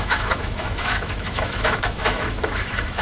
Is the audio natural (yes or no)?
no